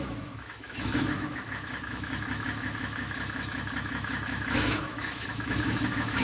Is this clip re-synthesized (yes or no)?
yes